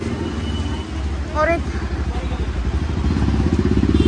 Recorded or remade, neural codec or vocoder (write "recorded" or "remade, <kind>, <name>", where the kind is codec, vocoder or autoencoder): recorded